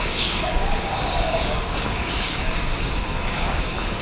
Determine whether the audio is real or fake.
fake